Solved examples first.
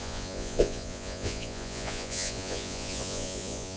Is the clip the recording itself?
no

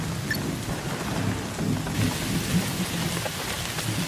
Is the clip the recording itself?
yes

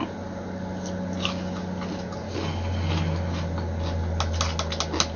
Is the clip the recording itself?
yes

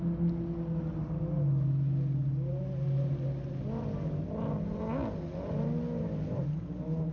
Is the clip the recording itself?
yes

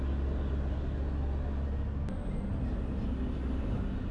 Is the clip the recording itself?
yes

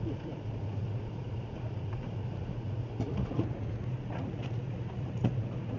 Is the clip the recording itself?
no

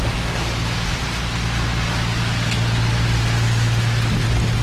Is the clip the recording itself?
yes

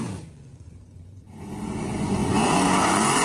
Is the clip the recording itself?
no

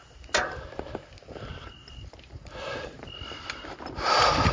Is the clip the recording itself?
yes